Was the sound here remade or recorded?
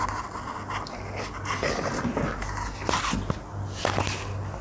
recorded